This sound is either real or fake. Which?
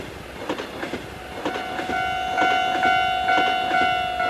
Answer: real